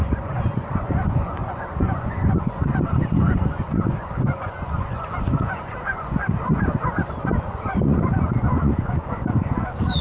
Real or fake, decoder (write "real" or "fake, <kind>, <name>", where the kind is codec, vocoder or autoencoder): fake, vocoder, Vocos